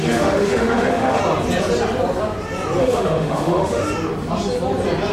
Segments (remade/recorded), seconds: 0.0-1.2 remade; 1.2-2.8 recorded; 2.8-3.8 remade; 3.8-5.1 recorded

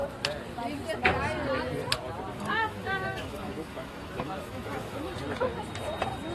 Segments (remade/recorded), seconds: 0.0-2.3 recorded; 2.3-5.1 remade; 5.1-6.3 recorded

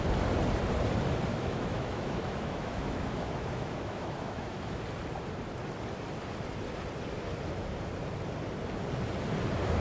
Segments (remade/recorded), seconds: 0.0-1.3 recorded; 1.3-4.8 remade; 4.8-9.8 recorded

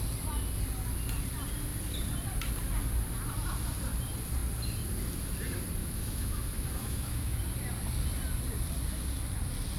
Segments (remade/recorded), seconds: 0.0-5.8 recorded; 5.8-7.4 remade; 7.4-9.8 recorded

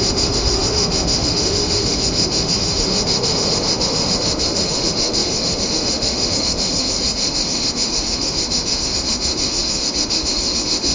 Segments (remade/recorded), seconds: 0.0-10.9 remade

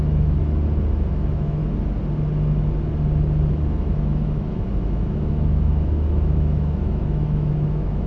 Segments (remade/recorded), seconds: 0.0-0.4 remade; 0.4-1.1 recorded; 1.1-1.6 remade; 1.6-3.5 recorded; 3.5-8.1 remade

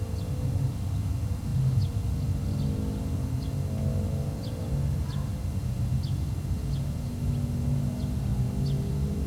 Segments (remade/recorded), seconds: 0.0-9.3 recorded

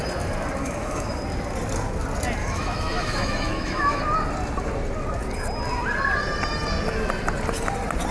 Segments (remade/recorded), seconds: 0.0-0.6 recorded; 0.6-1.2 remade; 1.2-2.4 recorded; 2.4-4.0 remade; 4.0-8.1 recorded